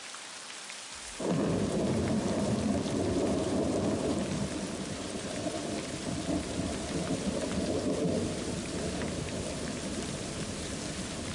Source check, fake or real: fake